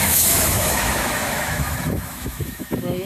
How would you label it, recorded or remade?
remade